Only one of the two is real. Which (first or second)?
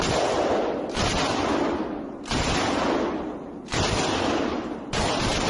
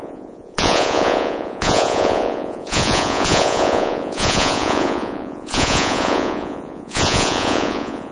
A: first